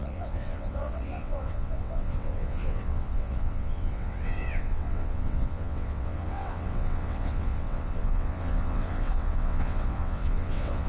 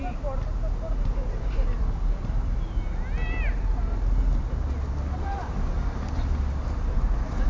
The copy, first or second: first